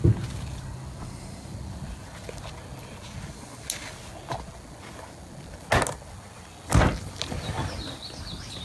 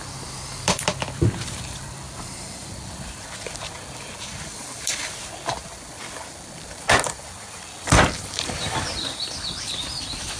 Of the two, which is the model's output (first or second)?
second